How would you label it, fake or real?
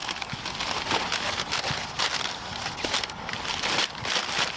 real